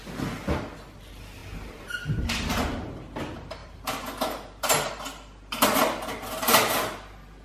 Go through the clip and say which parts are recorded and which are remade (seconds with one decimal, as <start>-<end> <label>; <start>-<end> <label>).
0.0-3.6 recorded; 3.6-4.9 remade; 4.9-7.4 recorded